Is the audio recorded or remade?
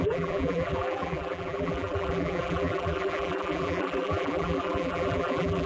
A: remade